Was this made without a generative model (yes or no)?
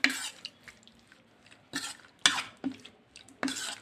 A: yes